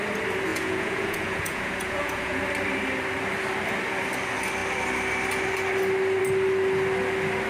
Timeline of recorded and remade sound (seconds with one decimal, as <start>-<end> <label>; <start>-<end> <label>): 0.0-0.5 recorded; 0.5-2.4 remade; 2.4-7.5 recorded